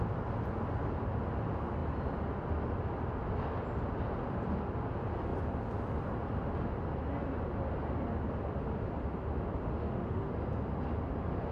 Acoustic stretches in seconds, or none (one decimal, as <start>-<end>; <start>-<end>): 0.0-9.6; 10.3-11.5